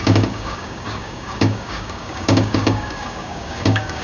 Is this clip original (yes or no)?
no